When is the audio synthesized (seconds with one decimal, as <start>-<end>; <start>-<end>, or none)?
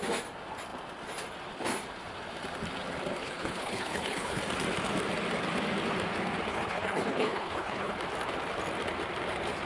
3.2-4.4; 6.5-8.0